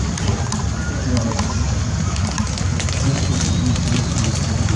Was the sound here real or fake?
fake